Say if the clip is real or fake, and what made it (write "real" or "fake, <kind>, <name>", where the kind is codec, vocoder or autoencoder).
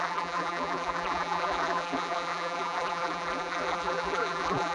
fake, vocoder, BigVGAN v2